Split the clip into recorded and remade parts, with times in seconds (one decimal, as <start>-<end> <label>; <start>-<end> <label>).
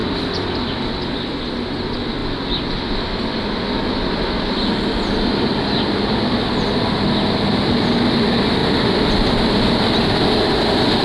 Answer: 0.0-0.9 remade; 0.9-8.6 recorded; 8.6-9.5 remade; 9.5-11.0 recorded